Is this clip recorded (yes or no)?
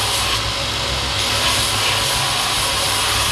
yes